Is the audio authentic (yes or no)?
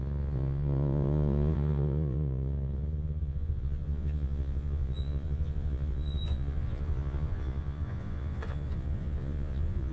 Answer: no